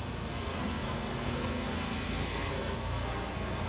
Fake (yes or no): yes